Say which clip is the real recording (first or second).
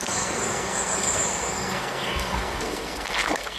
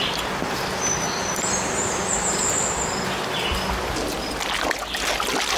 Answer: second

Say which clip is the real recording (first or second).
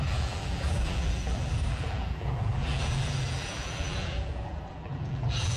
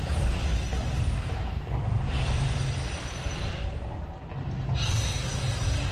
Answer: second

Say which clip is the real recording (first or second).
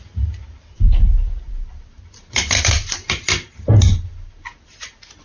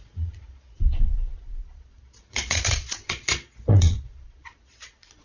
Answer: first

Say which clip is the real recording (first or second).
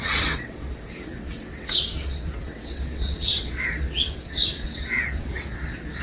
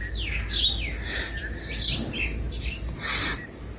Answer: second